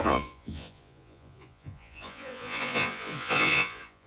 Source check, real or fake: fake